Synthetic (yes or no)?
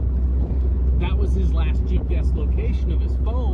no